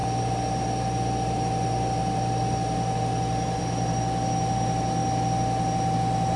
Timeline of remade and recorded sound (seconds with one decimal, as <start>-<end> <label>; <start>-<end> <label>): 0.0-6.4 recorded

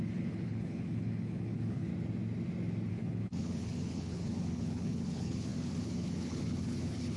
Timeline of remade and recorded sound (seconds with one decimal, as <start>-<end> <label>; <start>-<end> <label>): 0.0-1.9 remade; 1.9-2.9 recorded; 2.9-7.2 remade

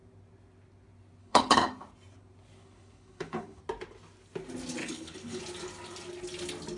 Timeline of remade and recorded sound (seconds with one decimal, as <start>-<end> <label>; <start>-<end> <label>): 0.0-1.2 recorded; 1.2-1.7 remade; 1.7-2.6 recorded; 2.6-3.6 remade; 3.6-4.8 recorded; 4.8-5.4 remade; 5.4-6.8 recorded

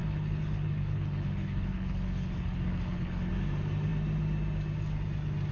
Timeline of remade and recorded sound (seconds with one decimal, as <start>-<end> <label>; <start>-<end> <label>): 0.0-3.3 remade; 3.3-5.5 recorded

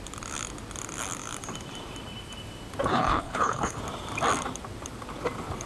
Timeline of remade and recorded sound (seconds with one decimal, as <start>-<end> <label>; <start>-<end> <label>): 0.0-2.9 recorded; 2.9-3.8 remade; 3.8-5.7 recorded

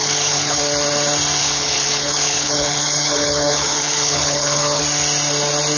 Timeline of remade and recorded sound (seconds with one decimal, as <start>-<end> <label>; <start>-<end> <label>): 0.0-0.6 remade; 0.6-1.4 recorded; 1.4-4.8 remade; 4.8-5.8 recorded

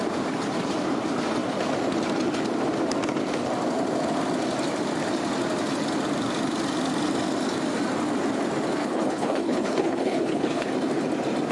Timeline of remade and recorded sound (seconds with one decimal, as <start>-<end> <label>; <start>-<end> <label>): 0.0-8.8 recorded; 8.8-10.7 remade; 10.7-11.5 recorded